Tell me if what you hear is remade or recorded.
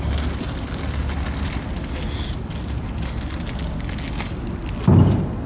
recorded